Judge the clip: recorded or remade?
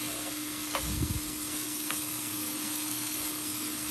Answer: remade